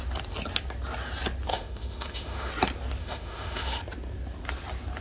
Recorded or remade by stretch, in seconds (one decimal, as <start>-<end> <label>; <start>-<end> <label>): 0.0-1.5 recorded; 1.5-2.5 remade; 2.5-3.0 recorded; 3.0-3.8 remade; 3.8-5.0 recorded